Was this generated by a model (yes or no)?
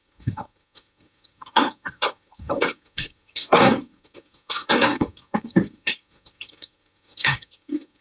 yes